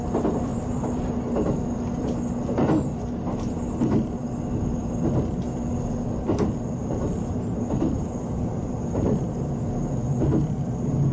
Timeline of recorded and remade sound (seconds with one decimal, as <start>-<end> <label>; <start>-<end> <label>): 0.0-0.5 recorded; 0.5-1.1 remade; 1.1-6.8 recorded; 6.8-9.2 remade; 9.2-11.1 recorded